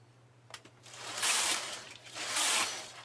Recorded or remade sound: remade